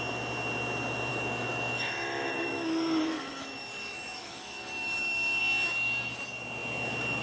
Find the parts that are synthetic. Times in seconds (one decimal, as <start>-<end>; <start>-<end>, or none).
1.1-5.4